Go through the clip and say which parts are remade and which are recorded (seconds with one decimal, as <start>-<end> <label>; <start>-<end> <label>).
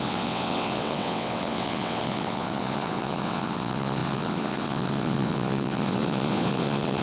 0.0-7.0 remade